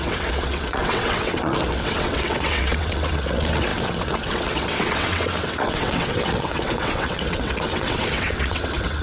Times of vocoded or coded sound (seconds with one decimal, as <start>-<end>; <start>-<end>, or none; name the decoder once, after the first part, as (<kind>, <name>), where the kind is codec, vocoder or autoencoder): 0.0-9.0 (vocoder, WaveNeXt)